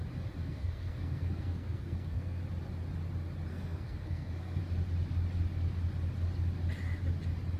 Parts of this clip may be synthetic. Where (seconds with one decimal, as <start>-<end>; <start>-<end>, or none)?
0.4-2.4; 3.5-4.6